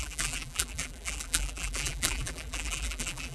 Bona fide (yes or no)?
no